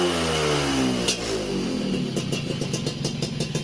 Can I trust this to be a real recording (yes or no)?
yes